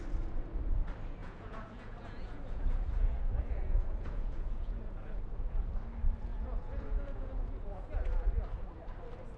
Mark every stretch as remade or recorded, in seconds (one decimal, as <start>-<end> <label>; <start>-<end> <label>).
0.0-1.2 recorded; 1.2-5.7 remade; 5.7-6.3 recorded; 6.3-8.0 remade; 8.0-9.4 recorded